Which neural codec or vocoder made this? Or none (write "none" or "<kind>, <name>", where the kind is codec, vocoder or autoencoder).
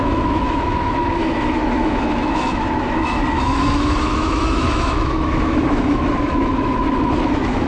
autoencoder, DAC-VAE